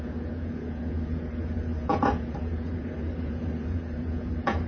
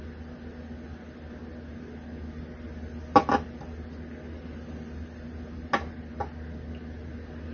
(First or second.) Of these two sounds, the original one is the second